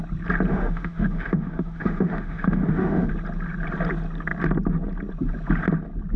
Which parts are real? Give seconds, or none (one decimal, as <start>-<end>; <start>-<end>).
0.0-0.5; 3.1-6.2